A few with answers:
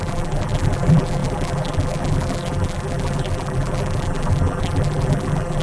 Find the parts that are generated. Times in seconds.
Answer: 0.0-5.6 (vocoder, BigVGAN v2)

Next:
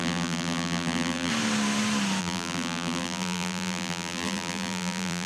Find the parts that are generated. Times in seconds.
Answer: 0.0-1.3 (vocoder, BigVGAN v2); 2.2-5.3

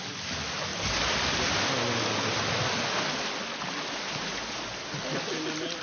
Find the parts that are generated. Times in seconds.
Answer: none